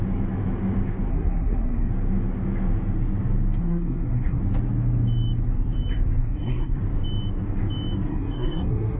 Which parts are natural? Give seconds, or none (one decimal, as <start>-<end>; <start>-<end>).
0.0-1.1; 1.9-3.6; 4.4-6.2; 6.8-8.1